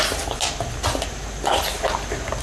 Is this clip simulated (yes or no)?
no